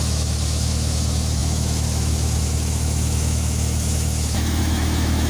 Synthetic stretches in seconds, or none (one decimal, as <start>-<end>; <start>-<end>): 0.0-5.3